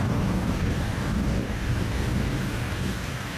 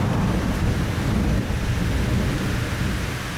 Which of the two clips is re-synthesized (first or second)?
first